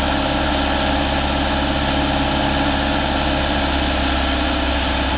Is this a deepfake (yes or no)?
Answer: no